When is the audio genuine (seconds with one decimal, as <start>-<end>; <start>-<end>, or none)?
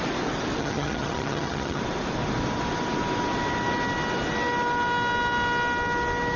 0.0-0.6; 1.8-6.4